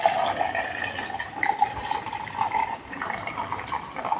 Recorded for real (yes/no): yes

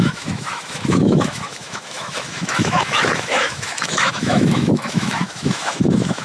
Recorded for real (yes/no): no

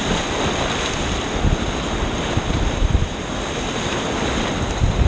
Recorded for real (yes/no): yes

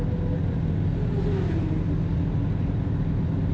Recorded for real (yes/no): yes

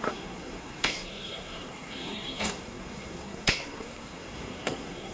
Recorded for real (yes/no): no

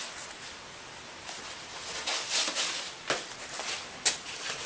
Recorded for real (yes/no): yes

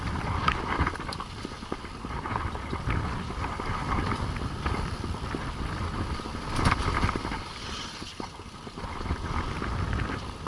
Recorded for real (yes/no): yes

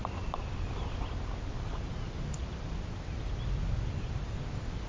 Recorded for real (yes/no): yes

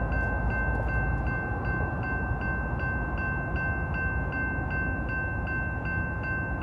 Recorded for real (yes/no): yes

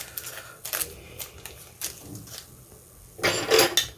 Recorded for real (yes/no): yes